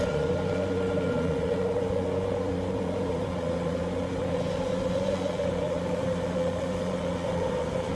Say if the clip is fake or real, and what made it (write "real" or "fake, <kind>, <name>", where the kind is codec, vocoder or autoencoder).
fake, vocoder, Vocos